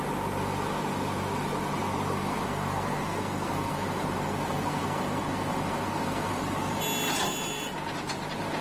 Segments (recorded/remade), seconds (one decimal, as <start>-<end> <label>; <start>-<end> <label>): 0.0-2.1 recorded; 2.1-6.3 remade; 6.3-8.6 recorded